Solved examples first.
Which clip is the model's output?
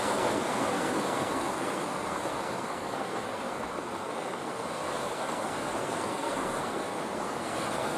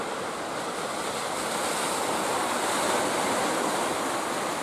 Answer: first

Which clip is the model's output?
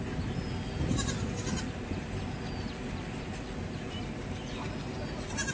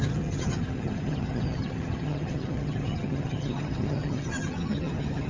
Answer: second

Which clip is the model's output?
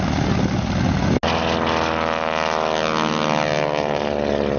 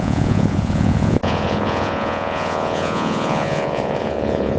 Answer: second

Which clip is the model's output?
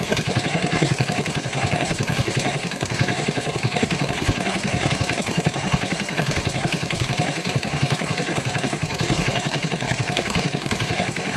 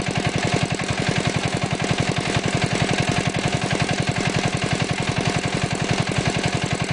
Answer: first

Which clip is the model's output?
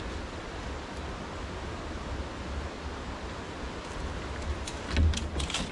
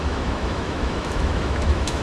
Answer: second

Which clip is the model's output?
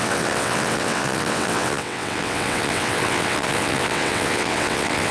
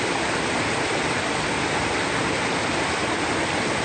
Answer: first